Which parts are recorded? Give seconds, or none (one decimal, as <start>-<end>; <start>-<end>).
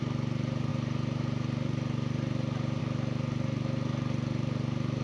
0.0-5.0